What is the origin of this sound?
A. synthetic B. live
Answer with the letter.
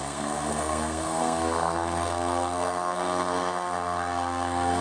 A